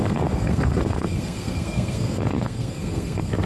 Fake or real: fake